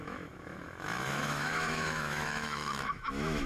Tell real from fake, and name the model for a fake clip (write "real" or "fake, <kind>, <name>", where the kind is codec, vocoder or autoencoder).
fake, autoencoder, DAC-VAE